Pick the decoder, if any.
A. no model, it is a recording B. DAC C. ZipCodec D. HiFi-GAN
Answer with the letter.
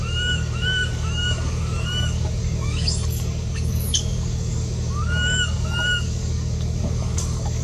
B